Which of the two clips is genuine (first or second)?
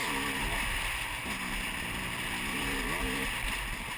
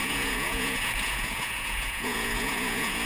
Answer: first